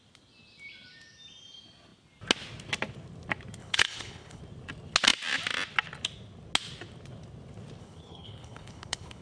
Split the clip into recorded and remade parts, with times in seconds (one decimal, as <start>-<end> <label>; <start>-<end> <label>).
0.0-3.6 recorded; 3.6-4.4 remade; 4.4-7.8 recorded; 7.8-9.2 remade